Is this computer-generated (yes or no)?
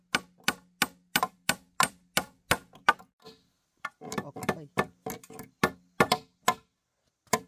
no